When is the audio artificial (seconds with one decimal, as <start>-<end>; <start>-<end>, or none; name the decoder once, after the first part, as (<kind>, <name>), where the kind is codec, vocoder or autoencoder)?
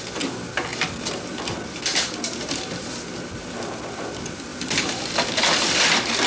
0.7-1.4 (vocoder, BigVGAN v2); 4.5-6.3